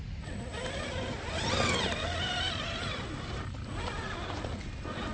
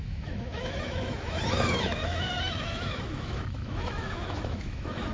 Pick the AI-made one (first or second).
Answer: second